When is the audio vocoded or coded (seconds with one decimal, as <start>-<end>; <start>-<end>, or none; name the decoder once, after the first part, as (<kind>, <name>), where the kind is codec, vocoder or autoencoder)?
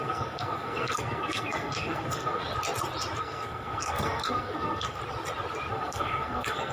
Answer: 0.0-2.4 (codec, SNAC); 3.2-5.0; 5.7-6.7